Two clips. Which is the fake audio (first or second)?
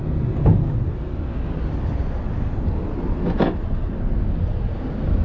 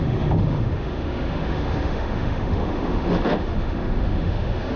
second